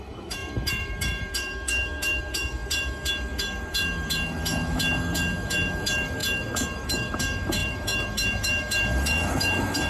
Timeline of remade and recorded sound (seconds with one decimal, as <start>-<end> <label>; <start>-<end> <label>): 0.0-9.9 remade